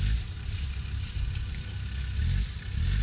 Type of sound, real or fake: real